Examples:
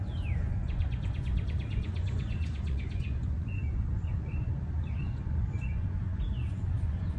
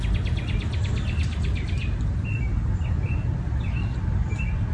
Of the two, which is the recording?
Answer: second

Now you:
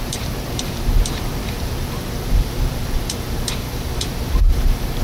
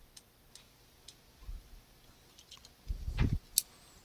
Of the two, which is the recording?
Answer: second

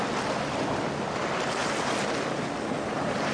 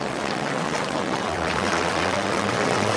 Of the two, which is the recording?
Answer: first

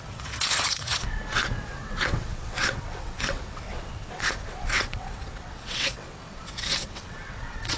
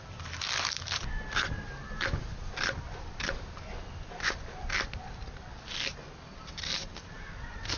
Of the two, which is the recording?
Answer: second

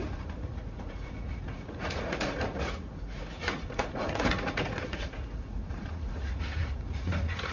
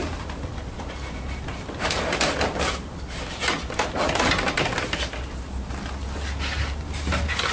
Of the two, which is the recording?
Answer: second